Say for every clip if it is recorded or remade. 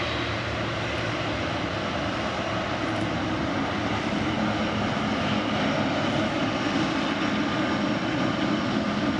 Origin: recorded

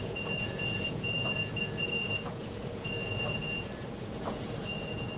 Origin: remade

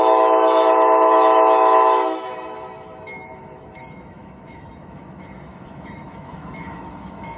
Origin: remade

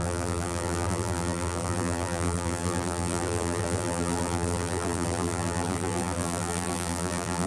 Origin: remade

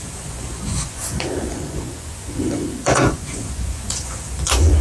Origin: remade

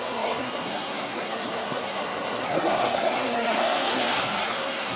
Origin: remade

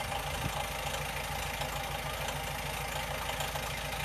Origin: recorded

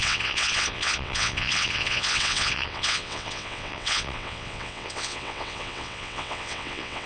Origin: remade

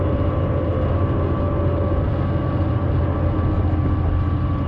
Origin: recorded